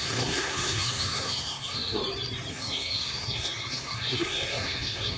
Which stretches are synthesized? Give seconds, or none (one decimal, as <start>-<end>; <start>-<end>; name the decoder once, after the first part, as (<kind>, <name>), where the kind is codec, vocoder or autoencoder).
0.0-2.0 (codec, SNAC); 2.5-5.2